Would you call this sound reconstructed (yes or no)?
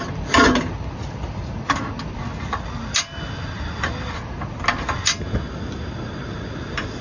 no